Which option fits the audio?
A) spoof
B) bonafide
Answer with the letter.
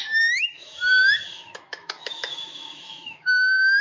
A